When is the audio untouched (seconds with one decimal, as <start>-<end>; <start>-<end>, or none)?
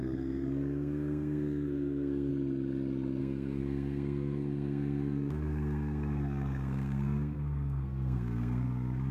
2.3-3.2